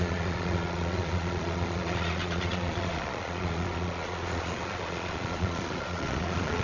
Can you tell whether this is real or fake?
fake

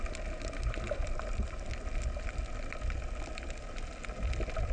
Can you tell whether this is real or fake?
real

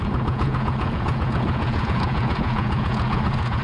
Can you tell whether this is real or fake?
fake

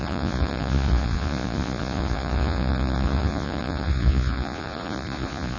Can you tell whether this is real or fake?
fake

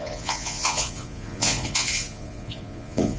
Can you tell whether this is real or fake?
fake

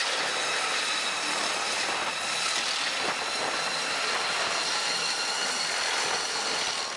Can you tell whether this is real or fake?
real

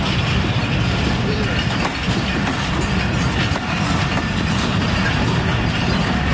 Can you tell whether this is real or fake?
real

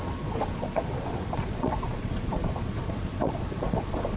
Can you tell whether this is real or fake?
fake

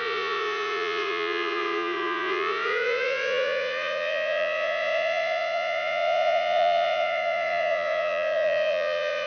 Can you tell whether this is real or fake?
fake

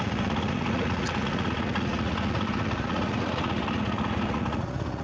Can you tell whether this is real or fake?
fake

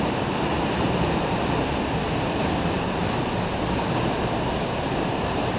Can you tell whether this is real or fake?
real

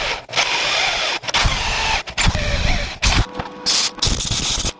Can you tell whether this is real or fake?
real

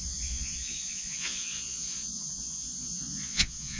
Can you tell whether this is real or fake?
fake